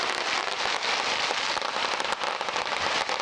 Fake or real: real